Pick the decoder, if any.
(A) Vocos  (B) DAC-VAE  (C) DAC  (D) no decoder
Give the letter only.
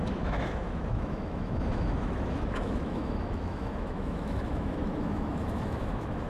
B